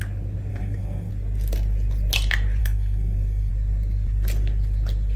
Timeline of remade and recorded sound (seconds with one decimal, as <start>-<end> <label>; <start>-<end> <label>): 0.0-0.5 recorded; 0.5-1.1 remade; 1.1-2.6 recorded; 2.6-3.5 remade; 3.5-5.2 recorded